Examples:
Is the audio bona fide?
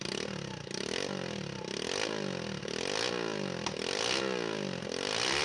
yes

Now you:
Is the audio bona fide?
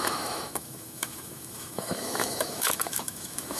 no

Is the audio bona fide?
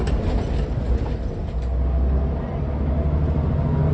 yes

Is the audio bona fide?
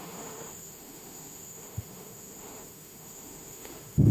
no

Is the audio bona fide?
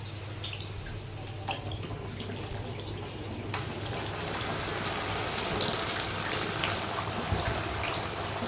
yes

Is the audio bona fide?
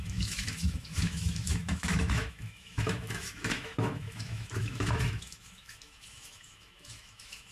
no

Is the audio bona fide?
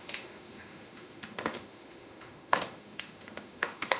no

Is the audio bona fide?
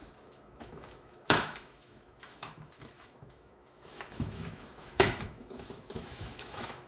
no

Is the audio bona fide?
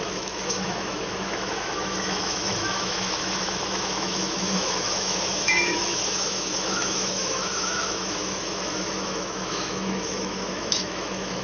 no